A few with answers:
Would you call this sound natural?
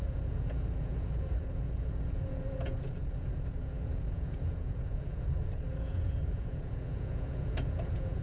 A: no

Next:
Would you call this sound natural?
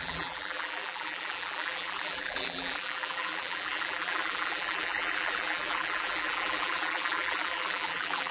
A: no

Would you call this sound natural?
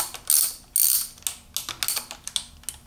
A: yes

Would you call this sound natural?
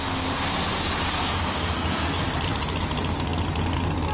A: yes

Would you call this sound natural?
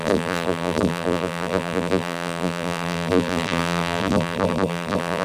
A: no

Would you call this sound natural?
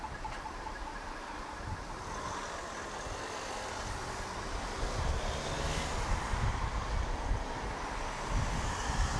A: yes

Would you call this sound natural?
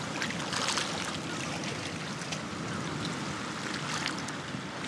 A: yes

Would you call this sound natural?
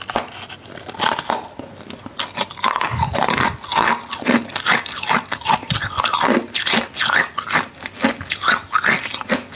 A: yes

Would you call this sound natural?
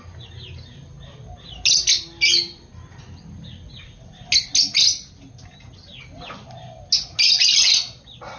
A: yes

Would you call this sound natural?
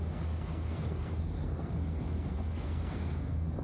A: no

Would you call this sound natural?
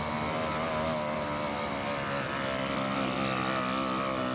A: yes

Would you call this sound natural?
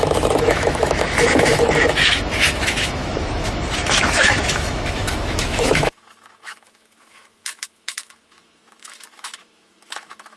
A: no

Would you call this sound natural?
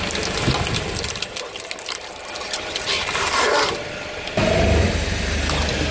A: yes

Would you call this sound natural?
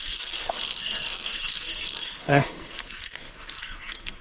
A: no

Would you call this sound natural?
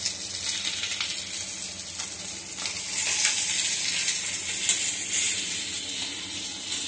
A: yes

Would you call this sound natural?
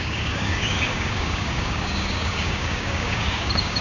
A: no